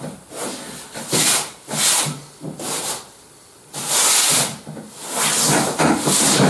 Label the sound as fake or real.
real